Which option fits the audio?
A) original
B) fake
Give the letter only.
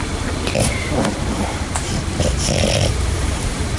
A